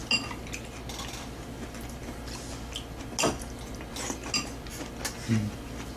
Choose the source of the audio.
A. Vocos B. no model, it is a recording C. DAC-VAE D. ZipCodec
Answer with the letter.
B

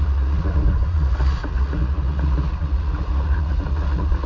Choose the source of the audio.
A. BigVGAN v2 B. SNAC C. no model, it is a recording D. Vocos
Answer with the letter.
D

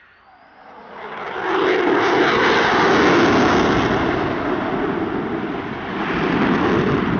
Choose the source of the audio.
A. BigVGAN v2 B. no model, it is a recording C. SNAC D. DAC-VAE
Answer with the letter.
B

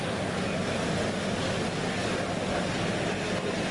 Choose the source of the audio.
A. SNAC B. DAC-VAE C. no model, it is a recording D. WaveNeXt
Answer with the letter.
C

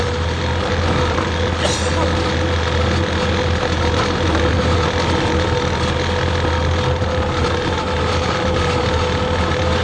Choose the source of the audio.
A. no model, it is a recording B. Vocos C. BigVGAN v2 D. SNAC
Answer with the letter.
A